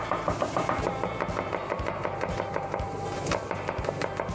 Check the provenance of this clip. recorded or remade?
recorded